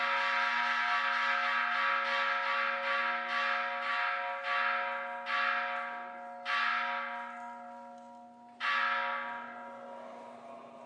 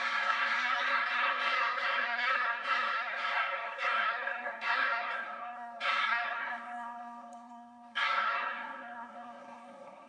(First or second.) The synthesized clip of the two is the second